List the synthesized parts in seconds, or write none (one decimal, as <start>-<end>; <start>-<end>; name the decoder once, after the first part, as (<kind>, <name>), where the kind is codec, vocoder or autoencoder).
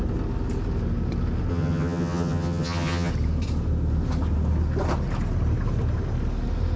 1.5-3.1 (vocoder, HiFi-GAN)